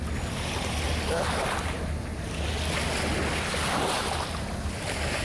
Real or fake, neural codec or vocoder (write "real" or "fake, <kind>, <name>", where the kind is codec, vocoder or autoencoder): real